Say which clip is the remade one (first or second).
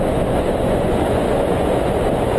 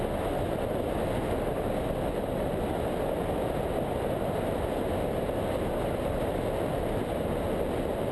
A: first